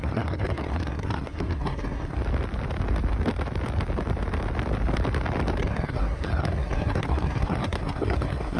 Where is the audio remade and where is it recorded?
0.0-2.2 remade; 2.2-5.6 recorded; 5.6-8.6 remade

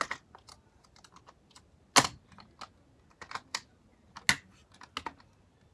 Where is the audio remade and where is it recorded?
0.0-5.7 recorded

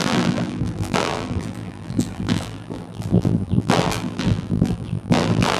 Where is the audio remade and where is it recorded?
0.0-5.6 remade

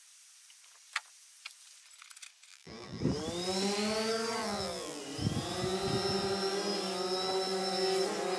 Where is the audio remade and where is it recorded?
0.0-2.5 recorded; 2.5-3.0 remade; 3.0-4.4 recorded; 4.4-5.0 remade; 5.0-8.4 recorded